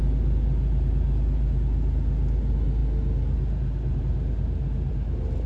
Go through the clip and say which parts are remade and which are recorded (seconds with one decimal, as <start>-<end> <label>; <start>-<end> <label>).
0.0-5.5 recorded

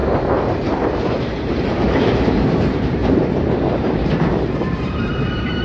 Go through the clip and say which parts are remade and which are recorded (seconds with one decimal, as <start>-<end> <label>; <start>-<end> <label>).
0.0-3.0 remade; 3.0-3.7 recorded; 3.7-5.6 remade